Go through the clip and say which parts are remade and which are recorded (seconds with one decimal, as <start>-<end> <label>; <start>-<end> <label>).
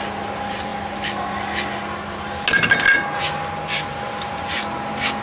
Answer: 0.0-5.2 recorded